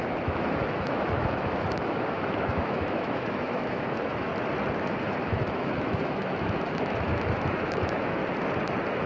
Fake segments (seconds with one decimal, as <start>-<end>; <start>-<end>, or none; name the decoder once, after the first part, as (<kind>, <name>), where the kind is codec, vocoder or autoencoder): 0.0-4.3 (autoencoder, DAC-VAE); 4.8-8.2